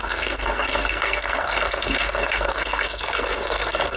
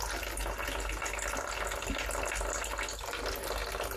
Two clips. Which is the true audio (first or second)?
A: second